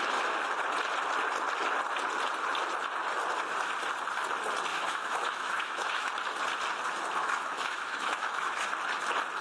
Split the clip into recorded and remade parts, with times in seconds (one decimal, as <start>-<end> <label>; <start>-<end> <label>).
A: 0.0-4.7 recorded; 4.7-6.1 remade; 6.1-7.2 recorded; 7.2-8.7 remade; 8.7-9.4 recorded